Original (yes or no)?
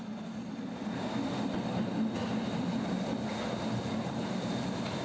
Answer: yes